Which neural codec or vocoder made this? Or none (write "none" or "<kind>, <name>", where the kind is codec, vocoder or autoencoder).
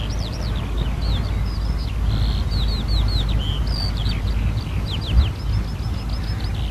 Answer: none